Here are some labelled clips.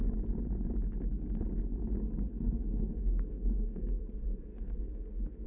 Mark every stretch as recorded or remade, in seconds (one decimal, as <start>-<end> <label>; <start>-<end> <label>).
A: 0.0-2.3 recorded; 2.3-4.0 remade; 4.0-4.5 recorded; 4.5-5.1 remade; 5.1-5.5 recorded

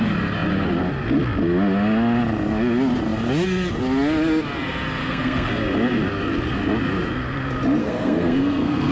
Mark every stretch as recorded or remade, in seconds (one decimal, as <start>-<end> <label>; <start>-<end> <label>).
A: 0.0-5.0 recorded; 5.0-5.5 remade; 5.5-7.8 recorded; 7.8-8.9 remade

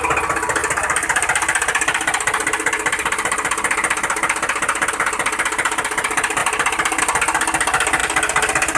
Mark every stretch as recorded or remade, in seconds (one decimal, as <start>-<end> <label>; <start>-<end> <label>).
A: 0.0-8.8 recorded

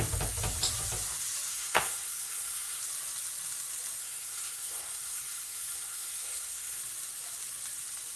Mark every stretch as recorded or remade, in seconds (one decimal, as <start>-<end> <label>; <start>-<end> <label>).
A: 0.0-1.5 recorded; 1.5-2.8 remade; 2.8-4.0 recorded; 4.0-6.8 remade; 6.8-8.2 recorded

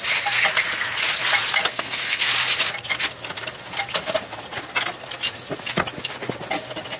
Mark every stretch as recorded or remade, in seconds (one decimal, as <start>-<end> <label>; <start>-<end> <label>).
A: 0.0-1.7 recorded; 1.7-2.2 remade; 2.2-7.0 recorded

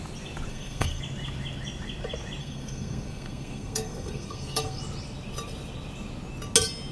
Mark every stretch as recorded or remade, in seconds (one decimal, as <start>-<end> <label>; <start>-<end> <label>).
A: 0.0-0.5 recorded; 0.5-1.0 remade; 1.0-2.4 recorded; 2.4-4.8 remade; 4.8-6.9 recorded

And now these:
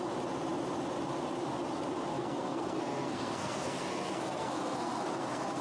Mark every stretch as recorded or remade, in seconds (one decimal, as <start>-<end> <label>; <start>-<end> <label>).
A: 0.0-2.1 recorded; 2.1-5.6 remade